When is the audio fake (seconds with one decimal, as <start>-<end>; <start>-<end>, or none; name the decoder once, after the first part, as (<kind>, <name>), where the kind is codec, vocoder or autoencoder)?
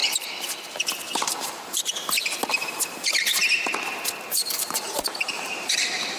1.2-1.8 (vocoder, BigVGAN v2); 2.5-3.4; 4.2-6.2